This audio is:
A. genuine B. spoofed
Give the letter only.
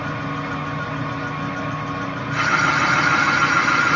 A